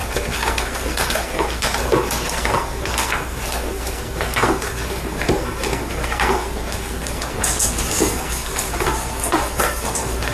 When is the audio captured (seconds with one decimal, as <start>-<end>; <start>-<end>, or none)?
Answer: none